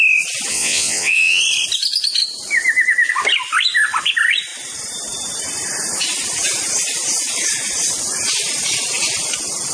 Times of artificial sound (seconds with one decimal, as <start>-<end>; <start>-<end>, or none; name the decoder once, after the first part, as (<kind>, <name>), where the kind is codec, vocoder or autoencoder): 0.5-1.4 (vocoder, WaveNeXt)